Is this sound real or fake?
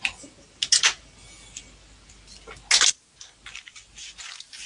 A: real